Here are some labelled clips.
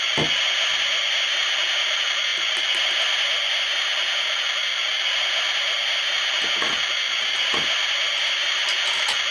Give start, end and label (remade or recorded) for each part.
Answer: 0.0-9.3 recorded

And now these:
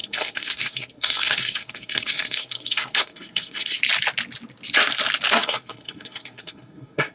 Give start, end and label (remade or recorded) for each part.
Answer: 0.0-3.8 remade; 3.8-5.3 recorded; 5.3-7.1 remade

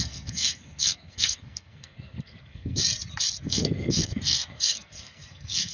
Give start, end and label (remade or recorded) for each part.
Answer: 0.0-2.8 remade; 2.8-3.4 recorded; 3.4-5.7 remade

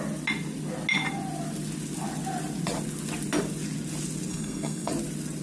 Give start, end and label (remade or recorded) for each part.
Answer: 0.0-4.3 recorded; 4.3-4.9 remade; 4.9-5.4 recorded

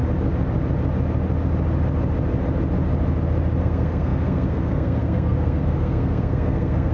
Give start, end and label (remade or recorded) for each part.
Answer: 0.0-3.6 recorded; 3.6-6.9 remade

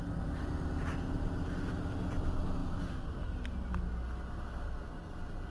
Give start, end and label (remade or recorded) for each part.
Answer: 0.0-5.5 recorded

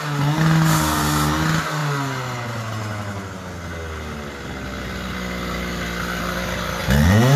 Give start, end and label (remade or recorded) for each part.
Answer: 0.0-7.4 recorded

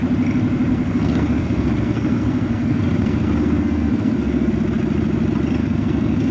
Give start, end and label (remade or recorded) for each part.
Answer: 0.0-0.7 recorded; 0.7-4.5 remade; 4.5-5.6 recorded; 5.6-6.3 remade